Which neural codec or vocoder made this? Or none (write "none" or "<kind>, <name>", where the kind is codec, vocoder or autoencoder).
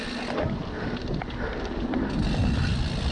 none